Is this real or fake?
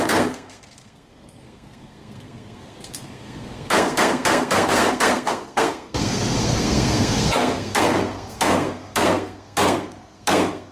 fake